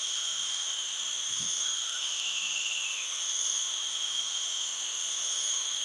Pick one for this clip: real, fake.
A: fake